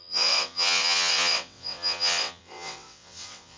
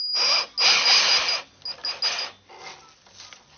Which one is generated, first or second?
first